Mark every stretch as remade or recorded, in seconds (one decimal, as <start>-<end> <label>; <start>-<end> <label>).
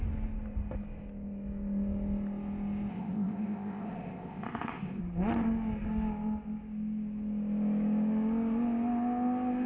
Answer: 0.0-2.9 recorded; 2.9-5.0 remade; 5.0-9.7 recorded